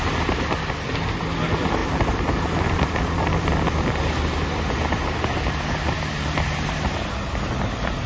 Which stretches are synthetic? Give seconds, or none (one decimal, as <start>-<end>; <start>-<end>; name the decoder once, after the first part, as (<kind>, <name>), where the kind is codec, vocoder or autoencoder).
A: 1.8-4.0 (vocoder, BigVGAN v2)